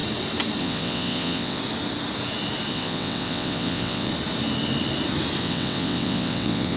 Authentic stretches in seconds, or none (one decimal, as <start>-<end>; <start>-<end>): 0.0-0.6; 1.6-2.7; 4.1-5.4